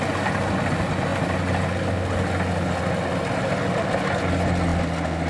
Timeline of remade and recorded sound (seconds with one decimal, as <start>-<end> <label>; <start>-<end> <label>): 0.0-5.3 recorded